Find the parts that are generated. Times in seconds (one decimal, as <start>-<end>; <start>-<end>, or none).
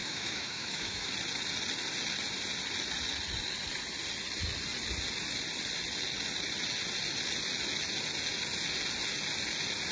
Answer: 0.0-1.1